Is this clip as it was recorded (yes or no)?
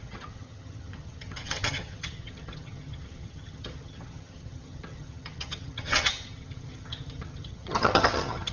no